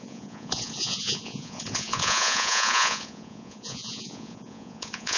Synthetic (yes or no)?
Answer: yes